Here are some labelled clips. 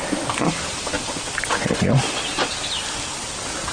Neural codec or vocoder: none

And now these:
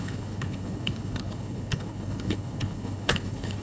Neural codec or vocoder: codec, HILCodec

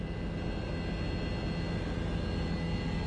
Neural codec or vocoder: none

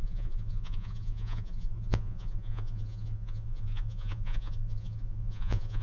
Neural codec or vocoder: vocoder, Vocos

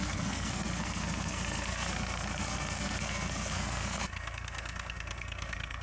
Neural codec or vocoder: codec, SNAC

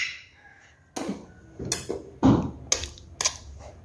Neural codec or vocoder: none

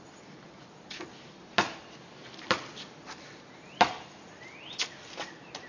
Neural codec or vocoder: none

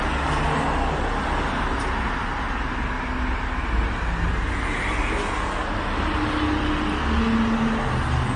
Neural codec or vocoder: none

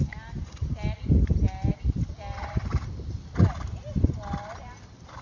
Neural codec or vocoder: none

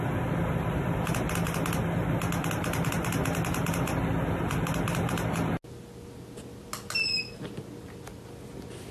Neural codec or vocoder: none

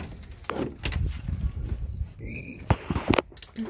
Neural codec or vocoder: none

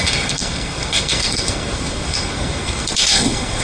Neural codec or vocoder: codec, SNAC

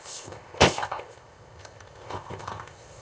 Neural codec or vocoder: codec, ZipCodec